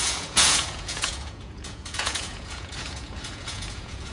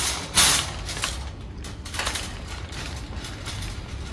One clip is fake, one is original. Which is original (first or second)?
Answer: second